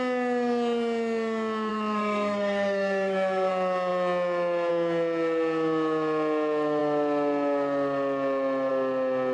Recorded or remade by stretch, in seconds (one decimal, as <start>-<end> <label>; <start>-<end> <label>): 0.0-1.7 recorded; 1.7-3.5 remade; 3.5-9.3 recorded